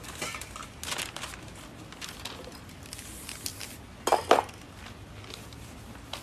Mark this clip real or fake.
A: real